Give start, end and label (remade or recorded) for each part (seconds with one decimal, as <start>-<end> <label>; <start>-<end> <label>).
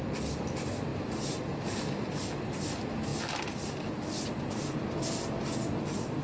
0.0-6.2 recorded